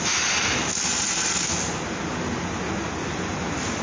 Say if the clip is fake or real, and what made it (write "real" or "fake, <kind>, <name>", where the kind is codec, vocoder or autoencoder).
real